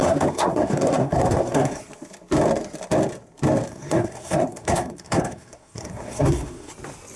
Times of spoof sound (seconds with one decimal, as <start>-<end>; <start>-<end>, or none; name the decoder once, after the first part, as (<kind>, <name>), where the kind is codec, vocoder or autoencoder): 0.0-1.8 (codec, SNAC); 3.7-6.7